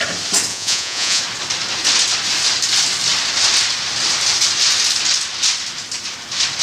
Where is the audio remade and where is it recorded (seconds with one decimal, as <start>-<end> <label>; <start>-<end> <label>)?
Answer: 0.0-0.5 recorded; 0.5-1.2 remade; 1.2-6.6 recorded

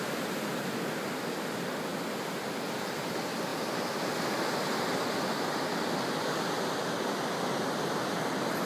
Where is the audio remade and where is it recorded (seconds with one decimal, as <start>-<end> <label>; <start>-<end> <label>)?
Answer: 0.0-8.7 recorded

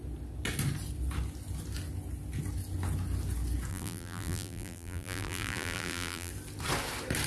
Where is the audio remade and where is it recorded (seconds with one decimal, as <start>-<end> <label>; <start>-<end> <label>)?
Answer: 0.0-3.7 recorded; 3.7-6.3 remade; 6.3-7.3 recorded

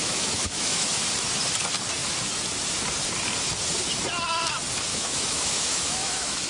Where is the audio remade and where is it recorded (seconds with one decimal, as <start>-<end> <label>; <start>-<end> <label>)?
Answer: 0.0-0.9 remade; 0.9-4.9 recorded; 4.9-6.5 remade

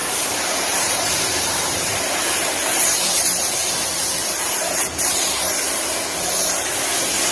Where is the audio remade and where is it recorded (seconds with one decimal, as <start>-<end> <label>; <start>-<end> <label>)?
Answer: 0.0-2.8 remade; 2.8-7.3 recorded

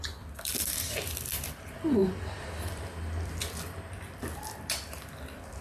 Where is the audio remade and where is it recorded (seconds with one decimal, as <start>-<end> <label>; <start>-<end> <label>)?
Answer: 0.0-5.6 remade